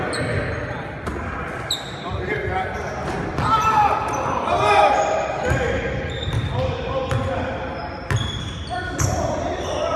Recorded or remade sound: recorded